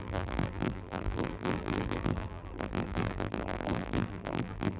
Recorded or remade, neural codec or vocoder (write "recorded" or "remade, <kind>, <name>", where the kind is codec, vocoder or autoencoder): remade, vocoder, BigVGAN v2